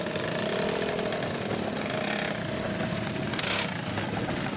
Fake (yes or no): no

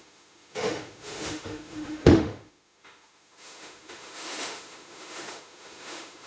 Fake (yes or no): yes